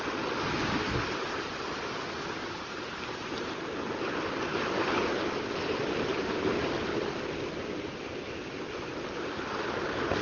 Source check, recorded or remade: recorded